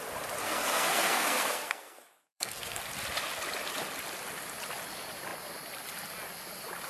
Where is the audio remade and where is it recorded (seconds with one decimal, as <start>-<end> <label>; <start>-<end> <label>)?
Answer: 0.0-0.4 recorded; 0.4-2.8 remade; 2.8-6.9 recorded